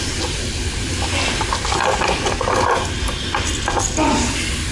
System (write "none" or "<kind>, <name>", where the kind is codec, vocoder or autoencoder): none